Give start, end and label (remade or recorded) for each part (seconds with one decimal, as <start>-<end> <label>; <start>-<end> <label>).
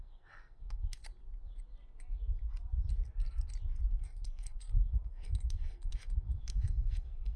0.0-1.0 remade; 1.0-3.9 recorded; 3.9-7.4 remade